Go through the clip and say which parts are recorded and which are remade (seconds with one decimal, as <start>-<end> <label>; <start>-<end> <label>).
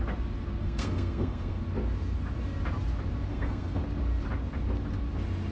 0.0-0.6 recorded; 0.6-1.6 remade; 1.6-3.3 recorded; 3.3-3.8 remade; 3.8-5.5 recorded